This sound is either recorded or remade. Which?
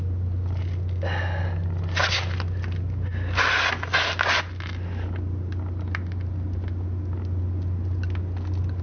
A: recorded